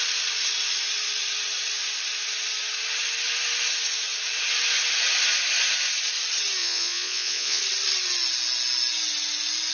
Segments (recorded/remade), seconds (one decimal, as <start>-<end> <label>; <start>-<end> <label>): 0.0-6.6 recorded; 6.6-7.6 remade; 7.6-9.7 recorded